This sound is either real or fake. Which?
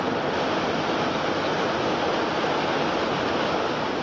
real